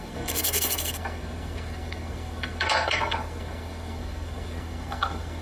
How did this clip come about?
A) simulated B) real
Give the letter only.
A